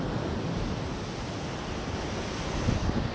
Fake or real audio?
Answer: real